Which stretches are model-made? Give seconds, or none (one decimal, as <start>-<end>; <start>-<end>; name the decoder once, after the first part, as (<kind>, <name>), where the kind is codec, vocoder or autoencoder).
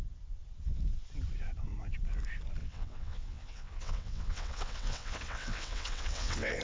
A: 2.6-6.6 (vocoder, WaveNeXt)